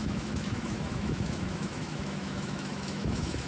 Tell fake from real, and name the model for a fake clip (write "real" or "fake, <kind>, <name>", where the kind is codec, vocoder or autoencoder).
fake, autoencoder, DAC-VAE